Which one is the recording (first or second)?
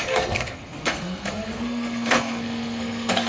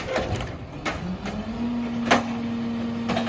second